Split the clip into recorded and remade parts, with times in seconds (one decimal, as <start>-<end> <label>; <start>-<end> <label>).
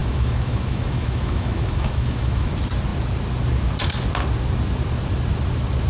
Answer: 0.0-2.5 remade; 2.5-5.9 recorded